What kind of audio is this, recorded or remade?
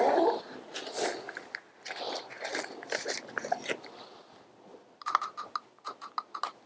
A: recorded